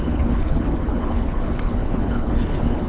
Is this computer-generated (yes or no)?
yes